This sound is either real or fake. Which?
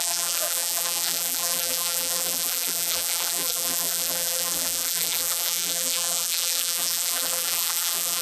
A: fake